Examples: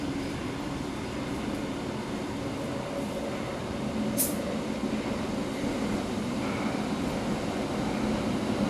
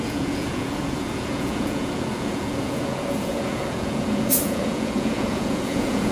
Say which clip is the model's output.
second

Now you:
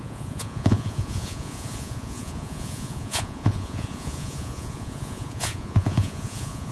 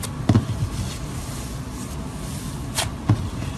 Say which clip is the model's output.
first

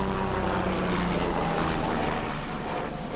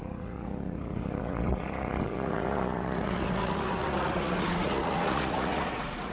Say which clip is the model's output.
second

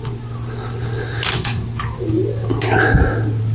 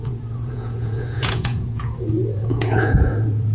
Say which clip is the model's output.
second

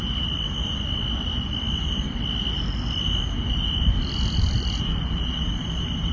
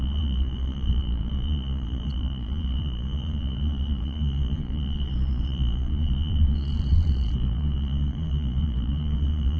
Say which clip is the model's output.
second